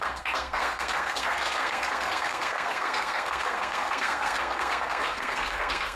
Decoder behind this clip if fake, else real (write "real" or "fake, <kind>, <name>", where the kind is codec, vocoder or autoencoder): fake, codec, SNAC